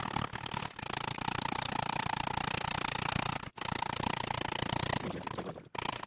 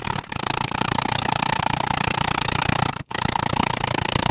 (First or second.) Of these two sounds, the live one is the first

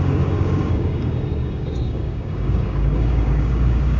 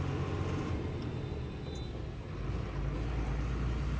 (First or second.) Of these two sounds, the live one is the second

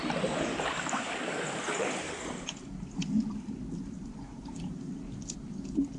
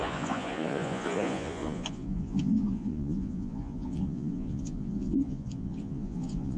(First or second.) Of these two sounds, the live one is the first